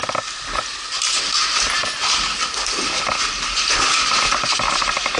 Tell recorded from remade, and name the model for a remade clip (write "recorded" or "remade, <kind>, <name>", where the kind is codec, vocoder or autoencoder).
recorded